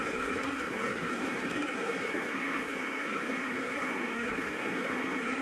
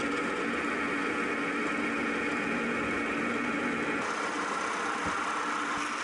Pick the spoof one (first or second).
first